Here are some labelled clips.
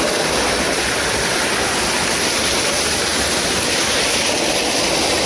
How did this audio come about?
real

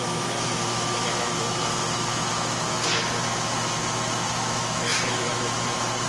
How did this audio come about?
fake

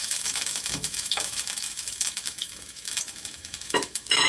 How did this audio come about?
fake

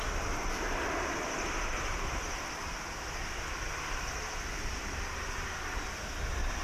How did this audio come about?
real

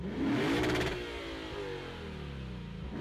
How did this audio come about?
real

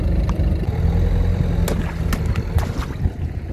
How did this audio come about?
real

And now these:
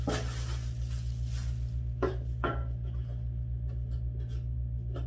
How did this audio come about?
real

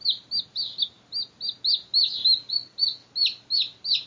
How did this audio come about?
real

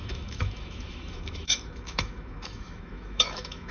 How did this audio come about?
fake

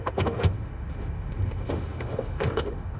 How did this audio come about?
fake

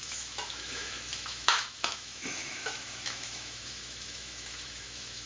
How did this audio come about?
fake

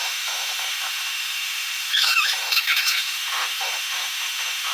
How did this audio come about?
fake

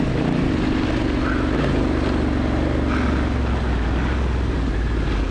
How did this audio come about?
real